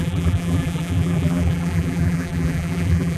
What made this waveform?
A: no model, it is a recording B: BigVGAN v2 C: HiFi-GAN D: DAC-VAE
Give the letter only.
B